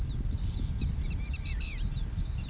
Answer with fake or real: real